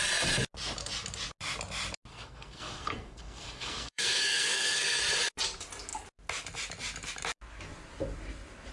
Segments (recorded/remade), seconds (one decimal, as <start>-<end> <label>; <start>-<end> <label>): 0.0-2.1 recorded; 2.1-5.0 remade; 5.0-8.7 recorded